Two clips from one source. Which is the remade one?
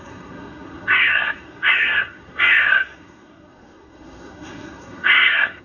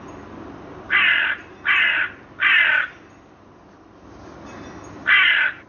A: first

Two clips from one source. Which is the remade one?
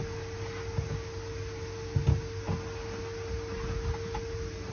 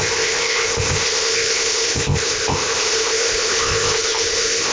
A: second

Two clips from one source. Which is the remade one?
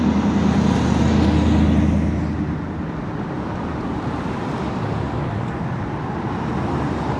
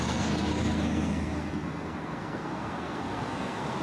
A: second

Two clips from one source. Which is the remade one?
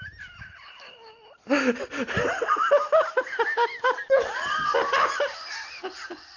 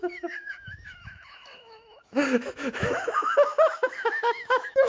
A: second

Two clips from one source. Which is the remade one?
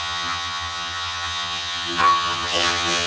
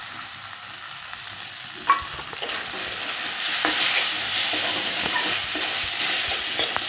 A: first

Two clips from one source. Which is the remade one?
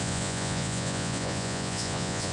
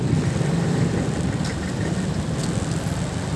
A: first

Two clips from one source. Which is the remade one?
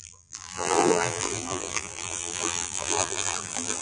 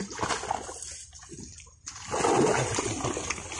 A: first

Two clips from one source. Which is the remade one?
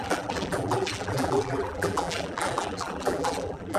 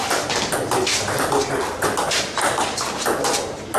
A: first